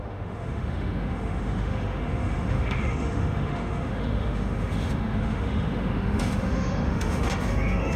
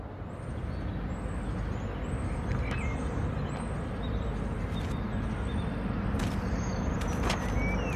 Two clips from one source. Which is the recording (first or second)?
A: second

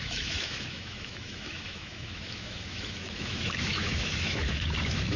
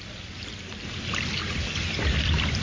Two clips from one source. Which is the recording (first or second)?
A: second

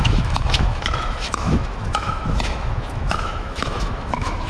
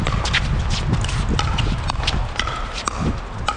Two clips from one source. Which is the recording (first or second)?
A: second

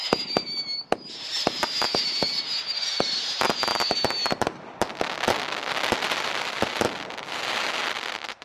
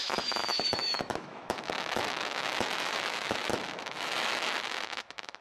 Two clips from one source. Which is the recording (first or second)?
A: first